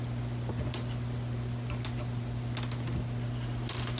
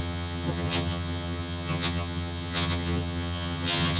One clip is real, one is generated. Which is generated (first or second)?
second